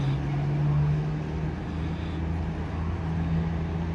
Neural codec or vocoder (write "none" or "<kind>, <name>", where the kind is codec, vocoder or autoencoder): none